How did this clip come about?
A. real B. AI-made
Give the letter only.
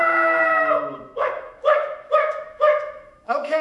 B